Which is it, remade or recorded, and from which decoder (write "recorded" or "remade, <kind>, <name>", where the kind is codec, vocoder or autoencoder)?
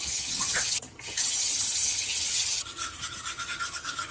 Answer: remade, vocoder, HiFi-GAN